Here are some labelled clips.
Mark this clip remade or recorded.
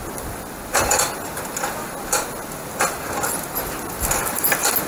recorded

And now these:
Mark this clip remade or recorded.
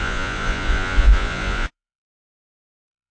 remade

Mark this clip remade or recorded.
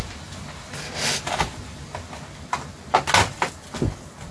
recorded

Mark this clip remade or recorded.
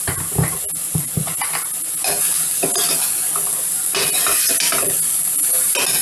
recorded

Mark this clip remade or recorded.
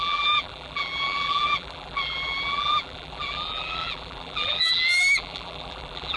remade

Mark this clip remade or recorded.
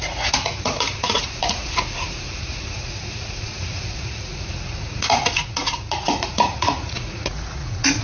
remade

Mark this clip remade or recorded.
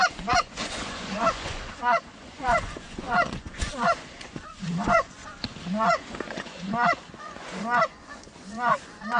remade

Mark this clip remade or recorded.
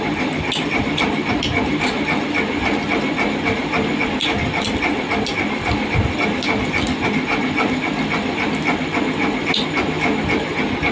recorded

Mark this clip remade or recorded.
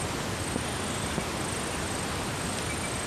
recorded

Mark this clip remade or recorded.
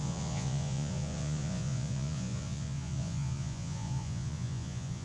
remade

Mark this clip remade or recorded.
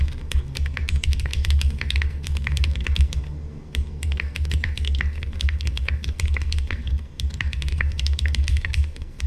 remade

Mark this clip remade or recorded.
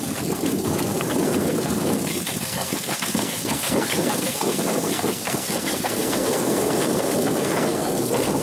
remade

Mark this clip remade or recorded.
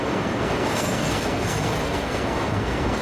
remade